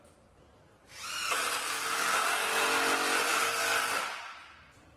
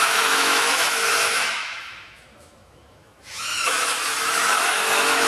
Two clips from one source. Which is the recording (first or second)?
first